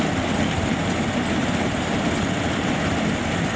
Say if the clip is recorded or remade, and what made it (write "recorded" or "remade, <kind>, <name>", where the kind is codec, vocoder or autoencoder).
recorded